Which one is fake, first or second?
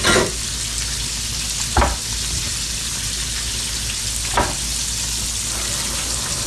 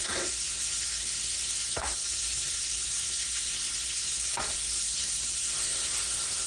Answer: second